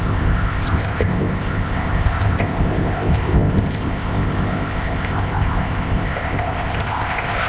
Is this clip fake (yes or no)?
yes